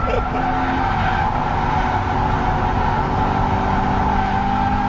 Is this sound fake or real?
real